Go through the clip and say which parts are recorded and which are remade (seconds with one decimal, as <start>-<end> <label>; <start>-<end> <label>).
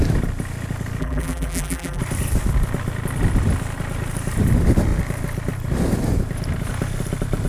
0.0-1.0 recorded; 1.0-2.0 remade; 2.0-7.5 recorded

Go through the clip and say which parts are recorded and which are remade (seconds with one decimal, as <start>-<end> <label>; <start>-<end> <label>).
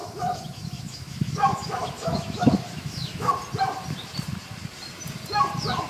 0.0-3.3 remade; 3.3-5.9 recorded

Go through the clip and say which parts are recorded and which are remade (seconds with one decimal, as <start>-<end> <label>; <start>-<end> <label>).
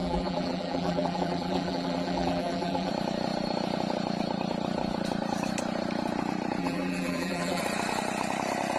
0.0-2.9 remade; 2.9-6.6 recorded; 6.6-7.6 remade; 7.6-8.8 recorded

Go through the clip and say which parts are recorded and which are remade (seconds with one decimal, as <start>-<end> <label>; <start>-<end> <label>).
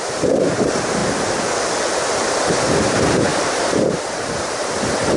0.0-1.0 remade; 1.0-2.1 recorded; 2.1-5.2 remade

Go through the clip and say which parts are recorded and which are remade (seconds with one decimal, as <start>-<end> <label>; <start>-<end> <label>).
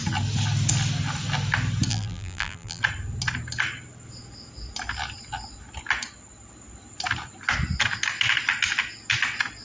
0.0-1.9 recorded; 1.9-2.8 remade; 2.8-9.6 recorded